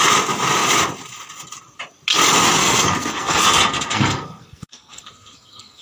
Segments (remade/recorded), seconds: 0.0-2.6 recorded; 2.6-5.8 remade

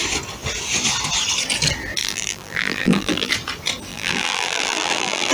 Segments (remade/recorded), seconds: 0.0-2.0 recorded; 2.0-3.3 remade; 3.3-3.9 recorded; 3.9-5.3 remade

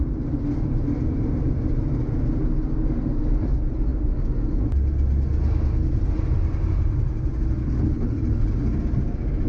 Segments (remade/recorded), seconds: 0.0-7.6 recorded; 7.6-8.5 remade; 8.5-9.5 recorded

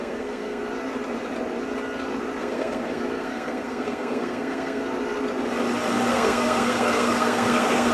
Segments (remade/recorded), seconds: 0.0-0.6 remade; 0.6-2.4 recorded; 2.4-4.8 remade; 4.8-6.1 recorded; 6.1-7.9 remade